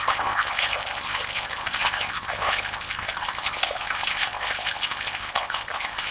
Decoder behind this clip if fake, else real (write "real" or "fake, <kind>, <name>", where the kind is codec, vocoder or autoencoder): fake, codec, ZipCodec